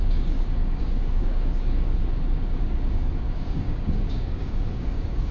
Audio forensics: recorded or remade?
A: remade